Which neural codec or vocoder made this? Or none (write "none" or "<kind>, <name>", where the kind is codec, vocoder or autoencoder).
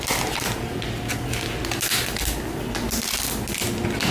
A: none